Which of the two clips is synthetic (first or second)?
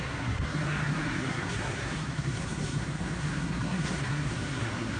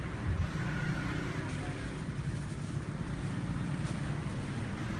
first